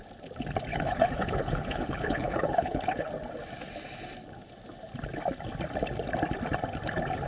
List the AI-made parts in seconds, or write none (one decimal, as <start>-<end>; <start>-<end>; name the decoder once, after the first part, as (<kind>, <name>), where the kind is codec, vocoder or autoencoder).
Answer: 0.7-3.1 (codec, HILCodec)